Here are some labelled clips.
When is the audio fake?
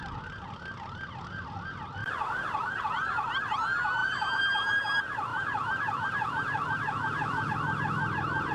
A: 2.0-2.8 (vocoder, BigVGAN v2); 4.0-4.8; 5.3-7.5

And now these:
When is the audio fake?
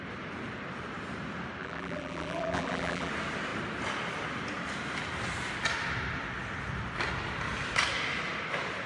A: 1.6-3.1 (vocoder, BigVGAN v2)